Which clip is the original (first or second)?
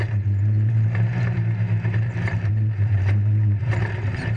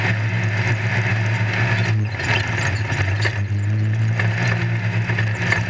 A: second